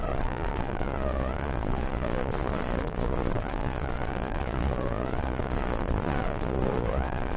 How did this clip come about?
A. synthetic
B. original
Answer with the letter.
A